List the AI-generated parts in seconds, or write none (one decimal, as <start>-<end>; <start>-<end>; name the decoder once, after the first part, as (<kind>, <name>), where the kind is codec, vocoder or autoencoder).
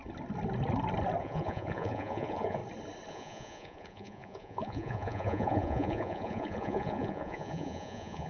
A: 1.2-2.6 (vocoder, Vocos); 3.1-8.3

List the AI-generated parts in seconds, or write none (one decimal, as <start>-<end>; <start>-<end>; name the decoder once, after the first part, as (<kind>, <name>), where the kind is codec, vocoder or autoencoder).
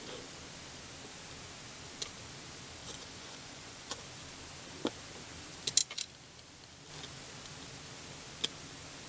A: 2.8-4.0 (vocoder, Vocos)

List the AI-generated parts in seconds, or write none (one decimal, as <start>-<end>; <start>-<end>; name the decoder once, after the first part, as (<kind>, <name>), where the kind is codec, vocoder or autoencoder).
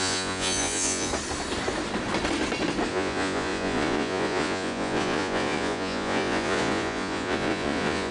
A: 0.0-1.1 (vocoder, Vocos); 2.9-8.1